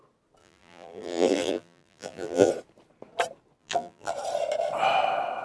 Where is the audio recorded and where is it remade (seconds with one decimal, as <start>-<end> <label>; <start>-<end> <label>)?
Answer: 0.0-0.4 recorded; 0.4-2.5 remade; 2.5-3.6 recorded; 3.6-4.1 remade; 4.1-5.4 recorded